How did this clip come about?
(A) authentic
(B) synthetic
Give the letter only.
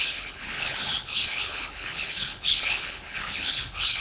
B